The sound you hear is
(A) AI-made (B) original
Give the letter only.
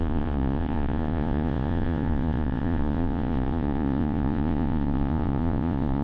A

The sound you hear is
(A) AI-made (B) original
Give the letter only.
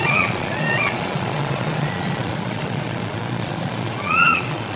A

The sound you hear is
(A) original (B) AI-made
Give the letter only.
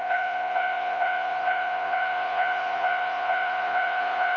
B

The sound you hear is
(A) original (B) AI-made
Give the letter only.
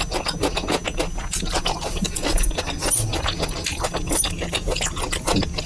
A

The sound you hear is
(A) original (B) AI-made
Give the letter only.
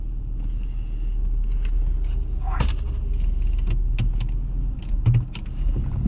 A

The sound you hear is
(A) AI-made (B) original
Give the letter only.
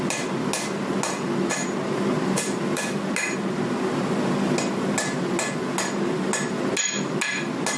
B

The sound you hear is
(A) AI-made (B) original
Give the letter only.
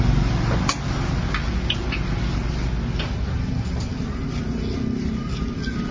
B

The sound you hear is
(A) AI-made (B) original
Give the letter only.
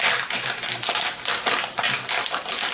B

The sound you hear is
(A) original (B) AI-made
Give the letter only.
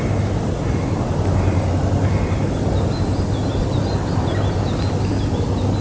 A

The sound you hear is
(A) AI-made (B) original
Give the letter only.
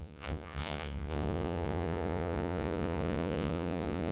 A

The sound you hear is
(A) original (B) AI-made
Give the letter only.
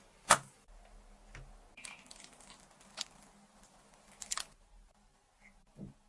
A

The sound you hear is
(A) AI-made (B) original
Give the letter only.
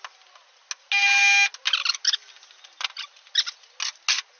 B